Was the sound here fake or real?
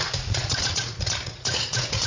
fake